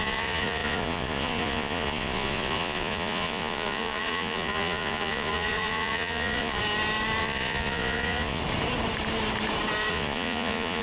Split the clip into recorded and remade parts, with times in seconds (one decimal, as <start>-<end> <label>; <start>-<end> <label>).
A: 0.0-6.6 remade; 6.6-7.2 recorded; 7.2-8.4 remade; 8.4-9.9 recorded; 9.9-10.8 remade